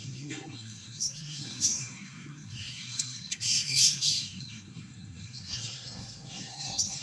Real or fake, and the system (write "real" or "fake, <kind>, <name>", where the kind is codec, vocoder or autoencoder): fake, codec, SNAC